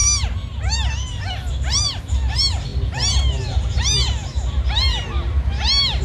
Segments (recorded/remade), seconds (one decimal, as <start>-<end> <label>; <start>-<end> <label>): 0.0-6.0 recorded